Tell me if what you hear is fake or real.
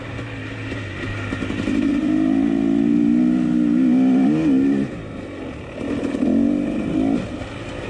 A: real